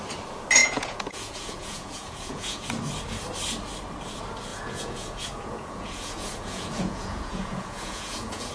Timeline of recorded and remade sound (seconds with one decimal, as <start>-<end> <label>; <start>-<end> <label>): 0.0-0.6 recorded; 0.6-2.7 remade; 2.7-4.5 recorded; 4.5-8.5 remade